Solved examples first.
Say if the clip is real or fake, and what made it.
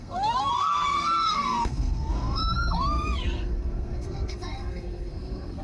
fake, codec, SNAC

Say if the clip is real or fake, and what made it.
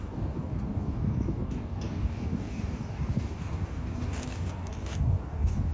fake, codec, DAC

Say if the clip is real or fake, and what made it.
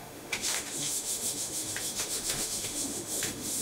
fake, autoencoder, DAC-VAE